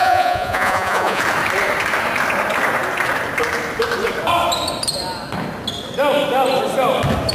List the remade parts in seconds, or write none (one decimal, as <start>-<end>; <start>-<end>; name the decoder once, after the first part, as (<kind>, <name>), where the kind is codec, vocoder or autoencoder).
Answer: 0.0-1.2 (vocoder, Vocos)